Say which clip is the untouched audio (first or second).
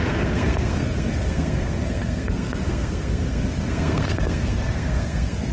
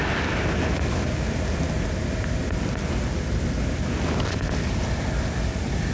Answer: second